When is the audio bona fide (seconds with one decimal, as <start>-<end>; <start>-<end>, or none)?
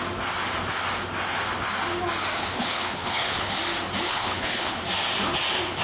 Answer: 0.0-2.4; 3.5-4.1; 4.8-5.8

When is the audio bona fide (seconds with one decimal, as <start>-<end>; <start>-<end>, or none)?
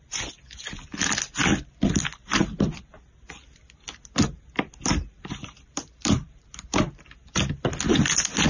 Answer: 0.0-5.1; 7.0-8.5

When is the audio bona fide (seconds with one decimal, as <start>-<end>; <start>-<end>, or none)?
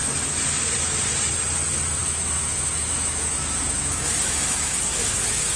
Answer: 0.0-2.0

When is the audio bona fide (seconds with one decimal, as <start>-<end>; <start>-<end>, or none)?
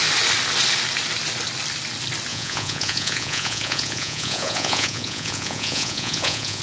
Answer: 0.0-2.3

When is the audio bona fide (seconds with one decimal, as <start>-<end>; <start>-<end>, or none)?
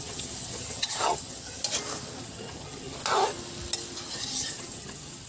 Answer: 1.6-2.2; 3.0-4.1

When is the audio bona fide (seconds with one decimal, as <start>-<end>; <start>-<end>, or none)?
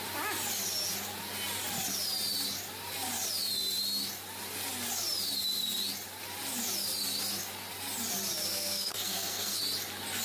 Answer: 0.0-8.5; 9.6-10.2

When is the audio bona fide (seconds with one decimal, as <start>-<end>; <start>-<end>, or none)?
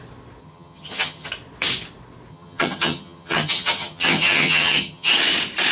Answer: 0.0-0.4; 1.3-2.3; 5.1-5.7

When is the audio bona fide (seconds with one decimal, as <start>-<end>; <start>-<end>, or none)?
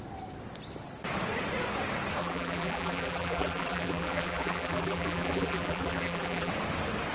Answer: 0.0-2.2; 6.5-7.1